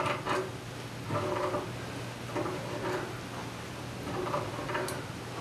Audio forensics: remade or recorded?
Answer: recorded